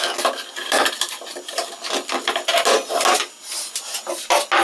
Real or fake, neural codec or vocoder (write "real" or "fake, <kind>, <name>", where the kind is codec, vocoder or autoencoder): real